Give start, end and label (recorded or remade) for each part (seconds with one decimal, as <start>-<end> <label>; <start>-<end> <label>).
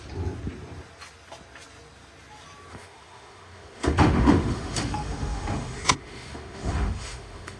0.0-2.7 recorded; 2.7-7.6 remade